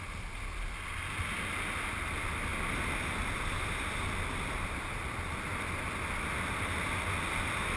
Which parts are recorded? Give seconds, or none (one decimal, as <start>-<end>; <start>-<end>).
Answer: 0.0-7.8